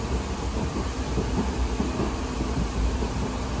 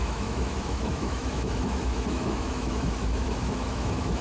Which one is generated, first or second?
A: second